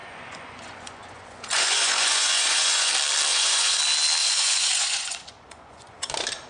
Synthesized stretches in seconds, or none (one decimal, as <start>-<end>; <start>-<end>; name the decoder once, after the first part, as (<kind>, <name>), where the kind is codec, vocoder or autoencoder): 0.0-2.9 (vocoder, Vocos); 3.3-3.8; 4.2-6.1